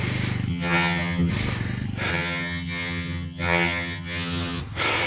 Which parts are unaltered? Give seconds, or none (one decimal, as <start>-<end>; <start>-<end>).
0.0-0.5; 1.3-2.1; 4.6-5.1